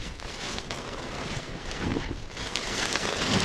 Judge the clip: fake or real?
fake